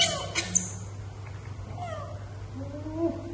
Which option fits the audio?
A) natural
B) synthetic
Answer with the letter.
A